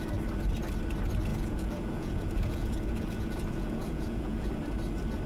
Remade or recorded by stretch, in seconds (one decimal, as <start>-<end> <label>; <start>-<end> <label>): 0.0-1.3 recorded; 1.3-4.5 remade; 4.5-5.3 recorded